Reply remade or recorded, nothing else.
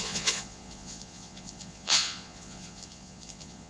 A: remade